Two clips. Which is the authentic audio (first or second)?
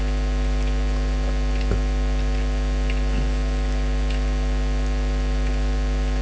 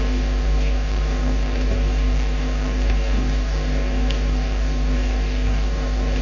first